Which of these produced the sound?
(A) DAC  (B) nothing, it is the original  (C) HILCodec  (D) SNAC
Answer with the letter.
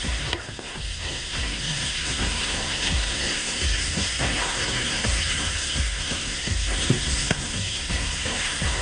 D